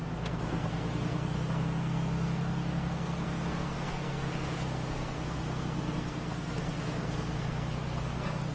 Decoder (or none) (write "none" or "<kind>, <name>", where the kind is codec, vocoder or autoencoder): codec, SNAC